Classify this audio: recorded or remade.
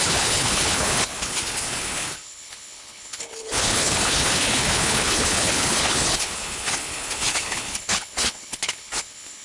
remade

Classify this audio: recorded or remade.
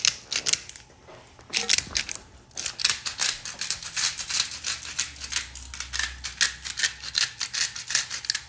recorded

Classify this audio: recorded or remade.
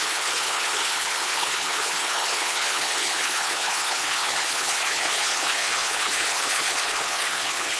remade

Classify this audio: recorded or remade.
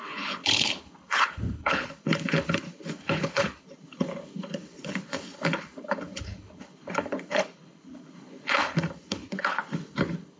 remade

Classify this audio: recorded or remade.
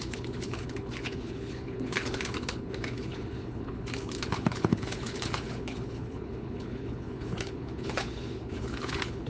remade